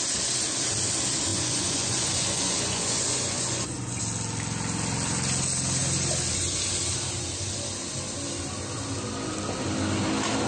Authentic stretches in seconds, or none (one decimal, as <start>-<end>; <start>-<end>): 0.0-1.3; 4.0-10.5